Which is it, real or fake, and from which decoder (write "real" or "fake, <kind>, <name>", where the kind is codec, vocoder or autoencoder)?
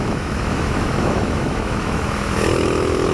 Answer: fake, autoencoder, DAC-VAE